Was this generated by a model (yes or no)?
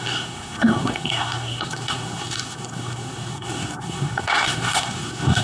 yes